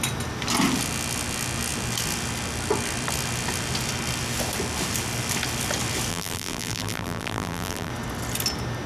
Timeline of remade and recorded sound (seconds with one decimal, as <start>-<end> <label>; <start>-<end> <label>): 0.0-6.1 recorded; 6.1-7.9 remade; 7.9-8.9 recorded